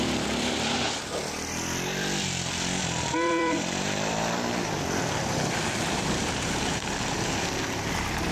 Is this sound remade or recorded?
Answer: remade